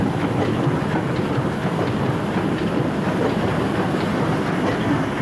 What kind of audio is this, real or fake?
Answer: real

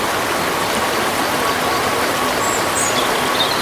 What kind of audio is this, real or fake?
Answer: real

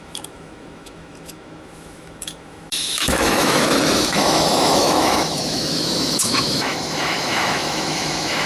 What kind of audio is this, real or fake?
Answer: fake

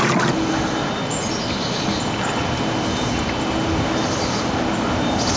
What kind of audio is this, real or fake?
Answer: real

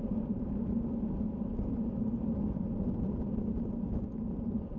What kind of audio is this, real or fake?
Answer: real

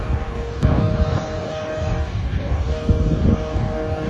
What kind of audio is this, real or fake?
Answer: fake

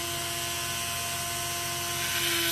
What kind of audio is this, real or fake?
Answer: real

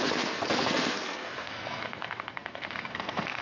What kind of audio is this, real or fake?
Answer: fake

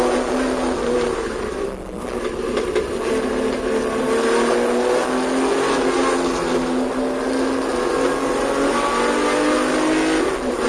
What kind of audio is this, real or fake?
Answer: real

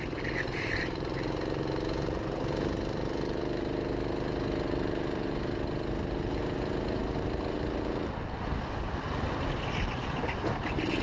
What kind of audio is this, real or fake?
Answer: real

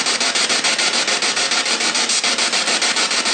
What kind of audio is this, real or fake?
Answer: real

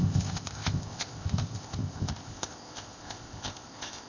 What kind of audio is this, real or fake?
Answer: fake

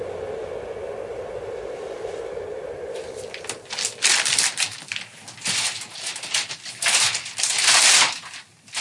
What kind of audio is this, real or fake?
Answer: real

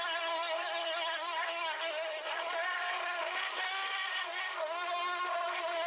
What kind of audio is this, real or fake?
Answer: real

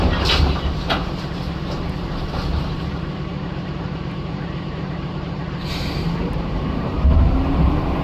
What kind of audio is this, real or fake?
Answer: fake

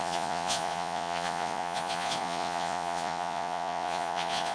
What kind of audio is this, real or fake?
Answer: fake